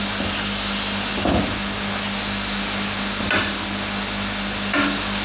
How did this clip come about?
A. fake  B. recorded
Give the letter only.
B